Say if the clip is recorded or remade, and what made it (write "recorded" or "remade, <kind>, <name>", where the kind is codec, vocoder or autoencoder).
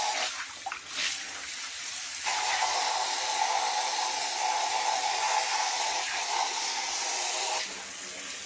recorded